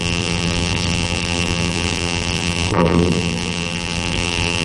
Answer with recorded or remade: remade